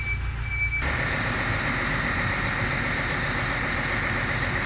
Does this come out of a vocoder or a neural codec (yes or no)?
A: no